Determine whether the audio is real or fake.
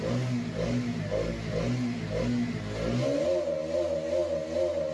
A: real